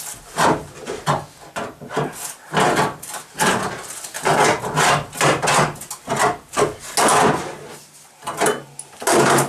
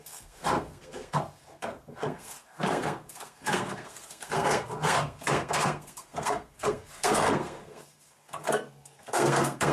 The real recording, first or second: first